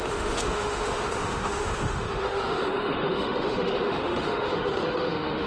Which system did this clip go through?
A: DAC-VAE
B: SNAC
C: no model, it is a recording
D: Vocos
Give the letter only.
A